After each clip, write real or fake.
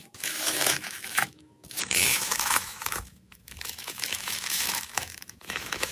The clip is fake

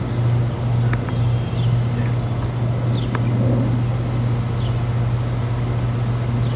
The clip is real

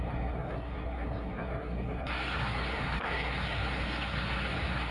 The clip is fake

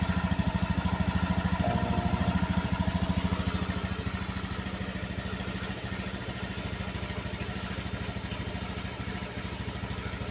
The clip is real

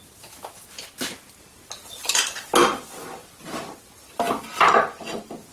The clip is real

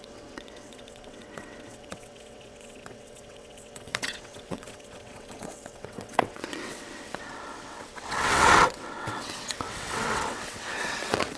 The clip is fake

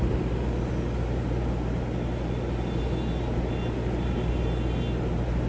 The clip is real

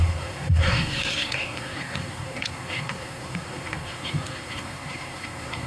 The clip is fake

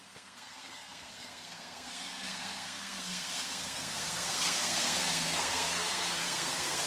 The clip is fake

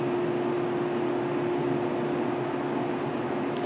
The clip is real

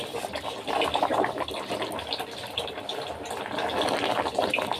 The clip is real